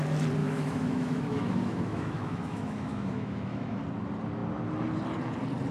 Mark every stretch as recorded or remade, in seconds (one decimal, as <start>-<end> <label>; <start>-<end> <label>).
0.0-0.4 recorded; 0.4-3.8 remade; 3.8-5.7 recorded